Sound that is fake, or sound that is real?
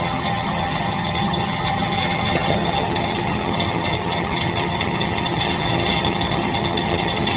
fake